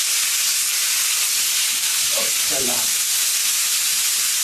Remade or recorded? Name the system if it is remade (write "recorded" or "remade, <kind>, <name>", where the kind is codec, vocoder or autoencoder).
recorded